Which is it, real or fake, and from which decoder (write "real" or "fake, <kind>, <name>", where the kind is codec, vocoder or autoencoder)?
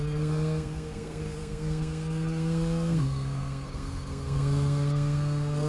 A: fake, codec, SNAC